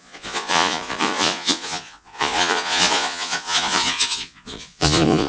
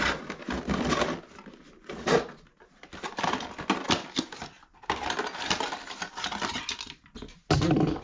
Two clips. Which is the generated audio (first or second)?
first